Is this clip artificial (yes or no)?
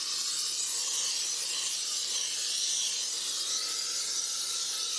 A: no